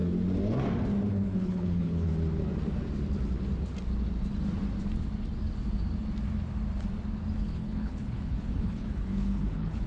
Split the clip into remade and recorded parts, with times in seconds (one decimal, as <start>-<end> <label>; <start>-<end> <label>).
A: 0.0-1.1 recorded; 1.1-2.1 remade; 2.1-7.4 recorded; 7.4-9.9 remade